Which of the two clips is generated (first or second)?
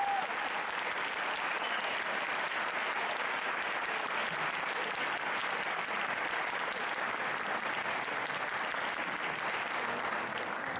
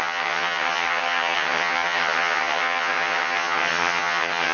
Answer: second